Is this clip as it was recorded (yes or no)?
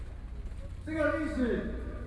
yes